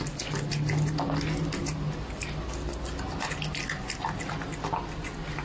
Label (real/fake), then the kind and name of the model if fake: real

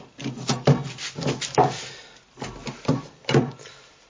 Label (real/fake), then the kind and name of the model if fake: real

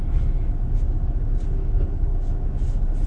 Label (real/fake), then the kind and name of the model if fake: real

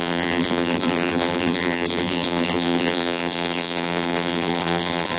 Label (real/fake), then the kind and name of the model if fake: fake, vocoder, BigVGAN v2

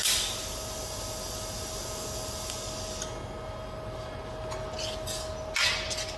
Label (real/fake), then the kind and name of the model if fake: real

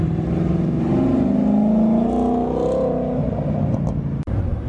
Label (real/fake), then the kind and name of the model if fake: real